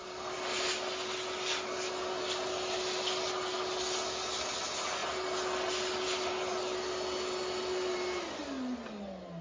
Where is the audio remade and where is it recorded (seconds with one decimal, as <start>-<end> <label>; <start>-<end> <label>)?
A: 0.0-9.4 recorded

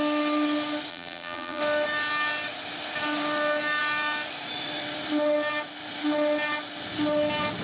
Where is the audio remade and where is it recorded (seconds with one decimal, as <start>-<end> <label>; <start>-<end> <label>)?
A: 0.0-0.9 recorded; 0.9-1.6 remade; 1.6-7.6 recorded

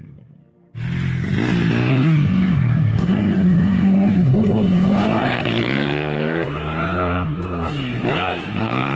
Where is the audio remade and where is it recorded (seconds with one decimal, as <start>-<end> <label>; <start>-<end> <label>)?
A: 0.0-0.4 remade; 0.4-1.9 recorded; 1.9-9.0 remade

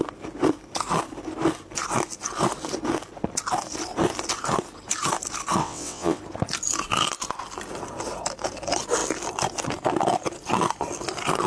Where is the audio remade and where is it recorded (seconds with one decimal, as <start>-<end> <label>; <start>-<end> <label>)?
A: 0.0-5.6 recorded; 5.6-6.2 remade; 6.2-11.5 recorded